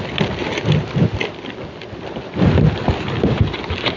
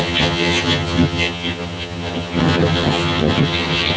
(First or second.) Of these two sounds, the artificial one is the second